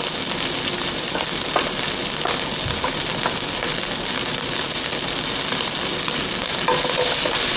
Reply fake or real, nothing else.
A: real